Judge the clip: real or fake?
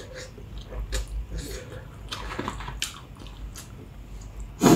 real